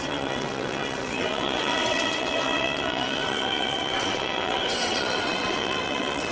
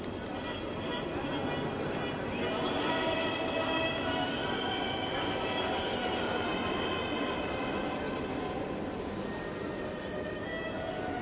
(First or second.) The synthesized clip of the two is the first